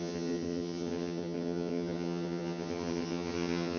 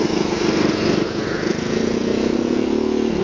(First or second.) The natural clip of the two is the second